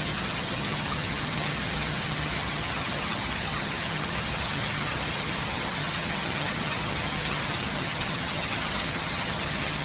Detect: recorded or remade remade